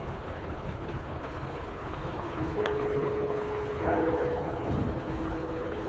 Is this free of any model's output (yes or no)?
no